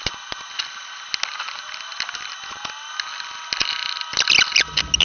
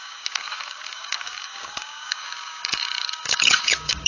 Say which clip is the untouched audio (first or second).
first